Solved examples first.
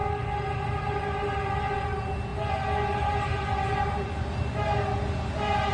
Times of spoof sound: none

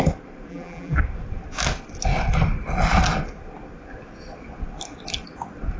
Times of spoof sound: 0.5-1.0 (vocoder, BigVGAN v2)